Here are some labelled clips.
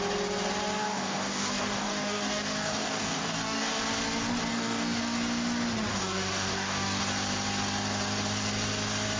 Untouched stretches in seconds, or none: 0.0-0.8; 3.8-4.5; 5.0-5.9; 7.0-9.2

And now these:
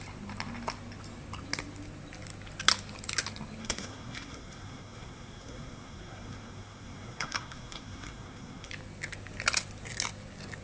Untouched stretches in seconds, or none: 0.0-3.6; 8.7-10.6